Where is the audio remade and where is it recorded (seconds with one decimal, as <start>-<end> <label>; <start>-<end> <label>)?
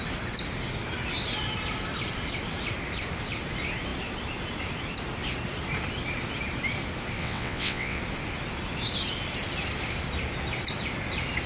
0.0-7.2 recorded; 7.2-8.0 remade; 8.0-11.5 recorded